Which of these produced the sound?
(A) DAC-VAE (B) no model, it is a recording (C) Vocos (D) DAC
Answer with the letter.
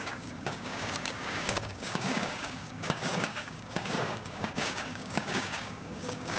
D